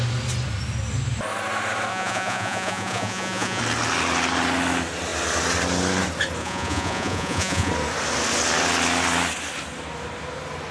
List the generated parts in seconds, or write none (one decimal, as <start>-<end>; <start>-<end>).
1.9-3.6; 6.4-7.7